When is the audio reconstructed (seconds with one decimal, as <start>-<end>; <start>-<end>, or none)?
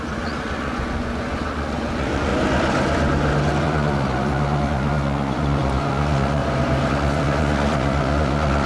0.0-2.3; 3.6-6.4; 6.9-8.7